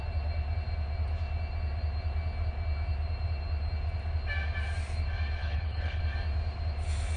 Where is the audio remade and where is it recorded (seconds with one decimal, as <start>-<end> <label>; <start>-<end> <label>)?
0.0-5.4 recorded; 5.4-6.0 remade; 6.0-7.2 recorded